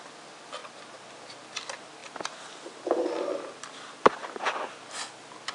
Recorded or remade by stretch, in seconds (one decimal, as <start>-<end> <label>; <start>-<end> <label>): 0.0-5.5 recorded